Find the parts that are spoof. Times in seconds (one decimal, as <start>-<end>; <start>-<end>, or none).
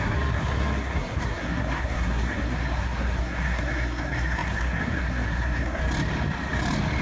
0.0-5.8